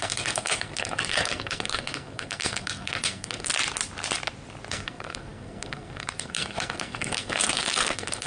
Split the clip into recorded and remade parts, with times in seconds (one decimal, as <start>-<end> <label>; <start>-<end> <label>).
0.0-3.5 remade; 3.5-4.7 recorded; 4.7-8.3 remade